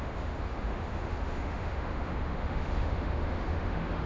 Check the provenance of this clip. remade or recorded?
remade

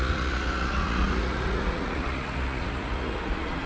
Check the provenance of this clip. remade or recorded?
remade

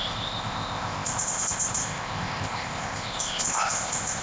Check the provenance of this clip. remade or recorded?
remade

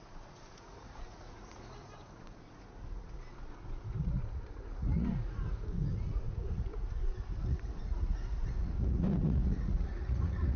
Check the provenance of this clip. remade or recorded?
remade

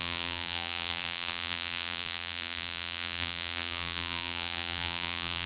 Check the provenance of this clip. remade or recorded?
remade